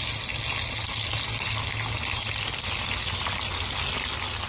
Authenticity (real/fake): real